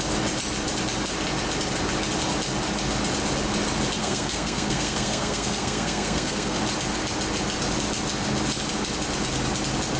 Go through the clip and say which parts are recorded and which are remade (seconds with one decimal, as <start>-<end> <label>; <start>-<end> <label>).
0.0-4.0 recorded; 4.0-6.6 remade; 6.6-10.0 recorded